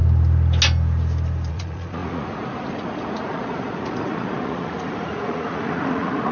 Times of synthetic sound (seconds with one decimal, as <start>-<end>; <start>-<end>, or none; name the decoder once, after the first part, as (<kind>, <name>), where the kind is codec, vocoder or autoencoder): 1.5-6.3 (vocoder, Vocos)

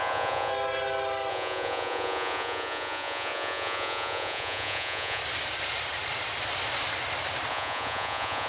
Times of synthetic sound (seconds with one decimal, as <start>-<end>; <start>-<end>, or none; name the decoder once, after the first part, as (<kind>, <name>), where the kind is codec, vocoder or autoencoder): 0.0-0.5 (vocoder, Vocos); 1.3-5.2; 7.5-8.5

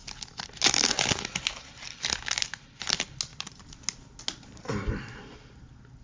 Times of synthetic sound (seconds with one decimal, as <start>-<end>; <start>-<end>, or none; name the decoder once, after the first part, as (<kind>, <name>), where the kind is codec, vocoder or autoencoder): none

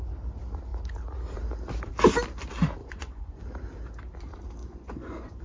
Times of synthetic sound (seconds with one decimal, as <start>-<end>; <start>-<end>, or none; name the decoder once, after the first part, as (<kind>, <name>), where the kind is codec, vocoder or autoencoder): 2.8-3.4 (vocoder, Vocos); 4.6-5.4

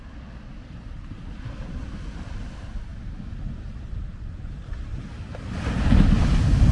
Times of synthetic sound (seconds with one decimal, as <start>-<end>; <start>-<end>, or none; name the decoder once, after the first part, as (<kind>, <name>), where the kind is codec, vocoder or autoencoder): none

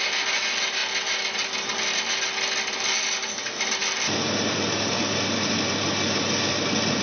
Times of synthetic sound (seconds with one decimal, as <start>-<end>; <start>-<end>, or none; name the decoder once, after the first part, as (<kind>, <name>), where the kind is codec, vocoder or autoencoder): none

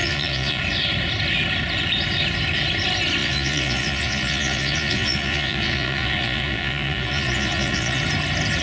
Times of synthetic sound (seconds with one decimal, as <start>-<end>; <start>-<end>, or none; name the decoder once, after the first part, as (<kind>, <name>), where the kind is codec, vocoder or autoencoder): 0.0-0.6 (vocoder, Vocos); 3.2-8.0

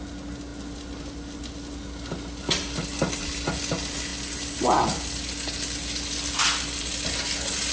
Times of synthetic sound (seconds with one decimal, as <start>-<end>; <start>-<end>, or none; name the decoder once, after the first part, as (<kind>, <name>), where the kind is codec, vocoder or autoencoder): none